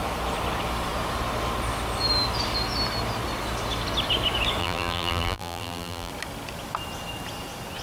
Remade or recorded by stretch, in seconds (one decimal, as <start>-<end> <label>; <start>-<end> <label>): 0.0-4.6 recorded; 4.6-6.1 remade; 6.1-7.8 recorded